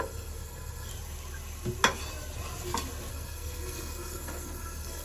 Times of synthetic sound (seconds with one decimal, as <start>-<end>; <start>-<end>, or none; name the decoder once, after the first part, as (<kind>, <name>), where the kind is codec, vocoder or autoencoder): 0.0-0.9 (codec, SNAC); 3.1-5.0